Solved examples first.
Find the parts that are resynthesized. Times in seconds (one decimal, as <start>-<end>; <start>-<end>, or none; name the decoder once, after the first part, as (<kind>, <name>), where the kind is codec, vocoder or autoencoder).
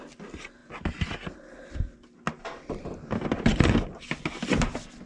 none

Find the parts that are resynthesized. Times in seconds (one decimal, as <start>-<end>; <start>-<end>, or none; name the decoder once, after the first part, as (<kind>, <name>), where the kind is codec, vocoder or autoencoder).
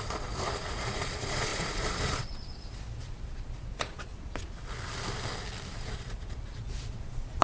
0.0-4.1 (vocoder, Vocos); 5.7-7.4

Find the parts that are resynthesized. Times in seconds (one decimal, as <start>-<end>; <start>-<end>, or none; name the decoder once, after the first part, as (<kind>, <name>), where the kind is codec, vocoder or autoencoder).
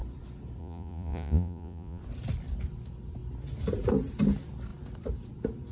0.6-2.0 (vocoder, Vocos)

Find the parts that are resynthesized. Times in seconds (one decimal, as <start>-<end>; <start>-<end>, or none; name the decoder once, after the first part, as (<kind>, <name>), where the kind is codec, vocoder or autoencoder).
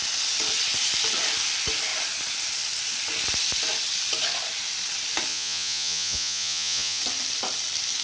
5.3-7.0 (vocoder, Vocos)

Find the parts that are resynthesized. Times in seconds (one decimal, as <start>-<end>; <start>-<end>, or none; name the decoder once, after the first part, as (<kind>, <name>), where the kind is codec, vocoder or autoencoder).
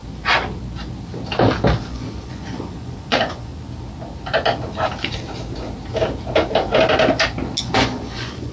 1.8-3.5 (vocoder, Vocos); 7.6-8.5